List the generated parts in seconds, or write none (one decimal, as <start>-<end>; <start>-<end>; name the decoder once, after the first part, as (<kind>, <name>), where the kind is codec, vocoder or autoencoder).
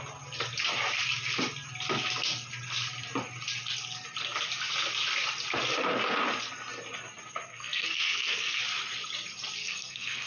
7.5-8.6 (codec, SNAC); 9.6-10.3